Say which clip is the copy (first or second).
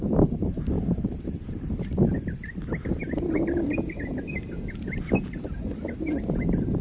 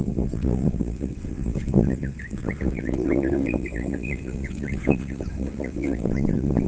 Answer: second